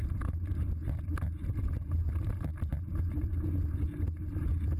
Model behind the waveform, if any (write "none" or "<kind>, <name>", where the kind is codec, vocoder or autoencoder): vocoder, BigVGAN v2